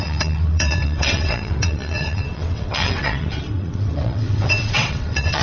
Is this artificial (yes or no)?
yes